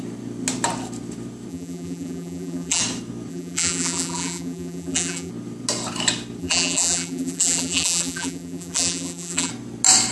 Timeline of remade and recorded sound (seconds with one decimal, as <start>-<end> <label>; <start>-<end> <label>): 0.0-1.5 recorded; 1.5-2.8 remade; 2.8-3.3 recorded; 3.3-5.3 remade; 5.3-6.4 recorded; 6.4-9.5 remade; 9.5-10.1 recorded